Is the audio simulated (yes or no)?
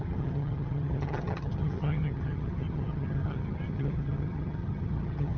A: yes